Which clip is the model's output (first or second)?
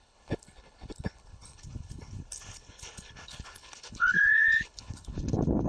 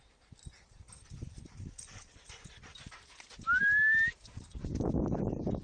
first